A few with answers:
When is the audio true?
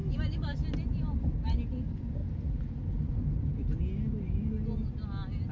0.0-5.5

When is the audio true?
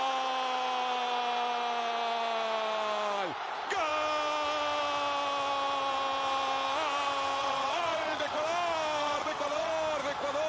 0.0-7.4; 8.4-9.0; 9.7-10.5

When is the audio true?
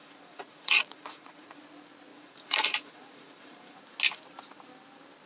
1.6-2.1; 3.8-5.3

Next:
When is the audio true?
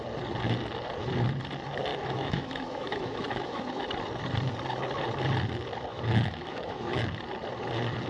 0.0-1.9; 3.9-5.9; 7.0-8.1